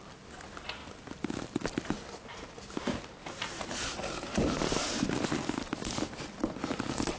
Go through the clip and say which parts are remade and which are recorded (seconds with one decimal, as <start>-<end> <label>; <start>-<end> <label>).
0.0-3.2 recorded; 3.2-4.9 remade; 4.9-7.2 recorded